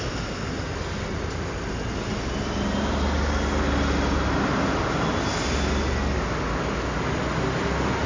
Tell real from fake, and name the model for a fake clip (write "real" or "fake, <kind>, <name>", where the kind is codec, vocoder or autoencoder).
real